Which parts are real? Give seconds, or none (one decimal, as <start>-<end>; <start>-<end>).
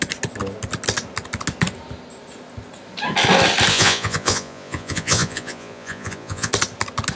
0.0-3.7; 6.5-7.2